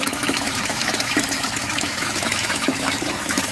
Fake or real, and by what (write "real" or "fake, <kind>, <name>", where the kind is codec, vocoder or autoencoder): fake, autoencoder, DAC-VAE